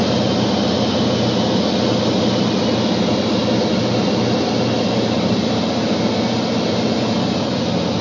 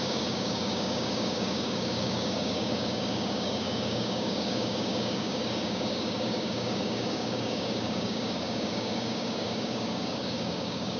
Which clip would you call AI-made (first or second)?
second